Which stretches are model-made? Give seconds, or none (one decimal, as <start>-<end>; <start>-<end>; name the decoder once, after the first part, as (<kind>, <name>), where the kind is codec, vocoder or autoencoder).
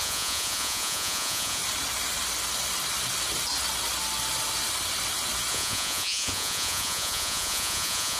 0.0-1.6 (vocoder, Vocos); 5.5-8.2